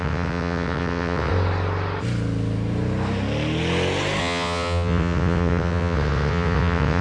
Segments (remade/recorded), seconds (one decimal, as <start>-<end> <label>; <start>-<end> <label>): 0.0-1.3 remade; 1.3-4.2 recorded; 4.2-7.0 remade